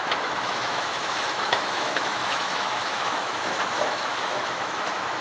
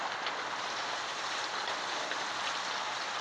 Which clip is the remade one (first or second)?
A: first